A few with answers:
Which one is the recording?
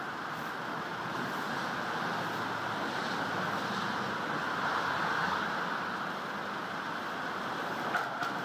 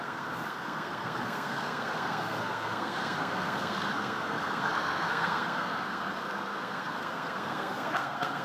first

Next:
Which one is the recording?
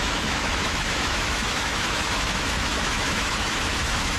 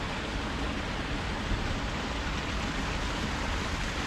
second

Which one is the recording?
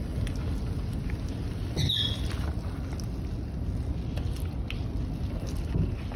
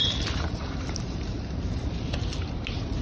first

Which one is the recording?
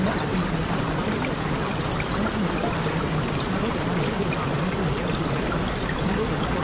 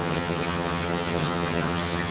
first